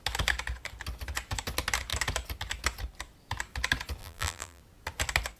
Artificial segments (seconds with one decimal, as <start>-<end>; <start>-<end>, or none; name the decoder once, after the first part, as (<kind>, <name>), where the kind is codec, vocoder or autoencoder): 4.0-4.6 (vocoder, BigVGAN v2)